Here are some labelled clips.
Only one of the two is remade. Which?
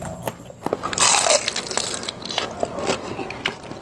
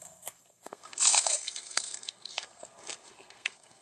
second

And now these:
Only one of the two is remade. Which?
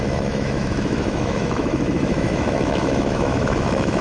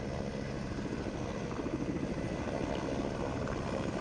first